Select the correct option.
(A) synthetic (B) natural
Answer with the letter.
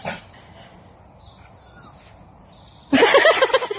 B